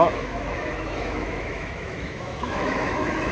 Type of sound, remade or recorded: remade